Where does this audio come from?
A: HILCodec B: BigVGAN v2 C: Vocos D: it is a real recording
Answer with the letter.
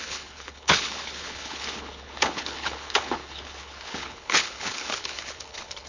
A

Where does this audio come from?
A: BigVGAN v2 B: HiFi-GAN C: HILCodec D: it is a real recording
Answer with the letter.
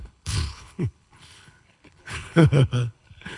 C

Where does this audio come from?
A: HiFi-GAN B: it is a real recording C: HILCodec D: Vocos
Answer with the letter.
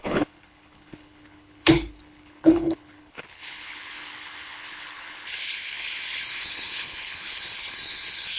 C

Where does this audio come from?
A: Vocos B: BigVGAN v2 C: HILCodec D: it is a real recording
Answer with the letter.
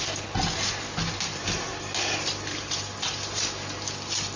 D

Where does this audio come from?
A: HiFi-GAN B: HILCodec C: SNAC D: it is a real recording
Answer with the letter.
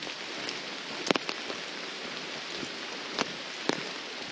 D